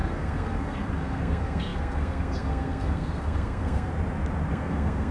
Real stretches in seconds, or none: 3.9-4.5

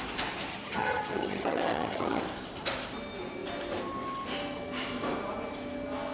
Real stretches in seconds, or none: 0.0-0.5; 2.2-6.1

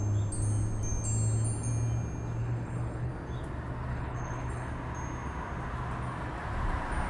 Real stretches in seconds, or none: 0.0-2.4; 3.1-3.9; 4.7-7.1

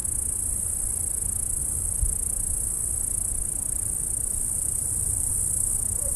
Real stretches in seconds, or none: 0.0-1.6; 5.3-6.2

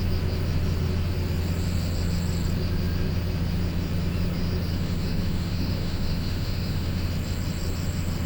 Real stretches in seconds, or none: 0.0-4.7; 7.1-8.3

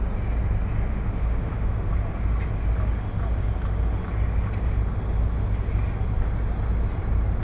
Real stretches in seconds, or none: 0.0-0.9; 1.9-7.4

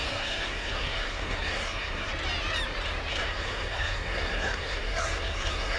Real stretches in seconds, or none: 2.1-3.1